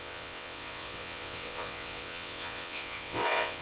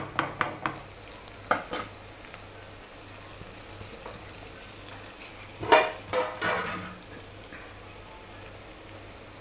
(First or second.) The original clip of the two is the second